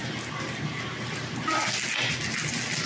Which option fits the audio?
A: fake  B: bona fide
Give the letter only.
B